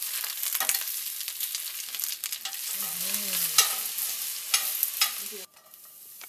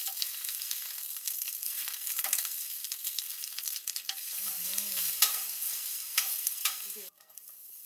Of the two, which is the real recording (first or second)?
first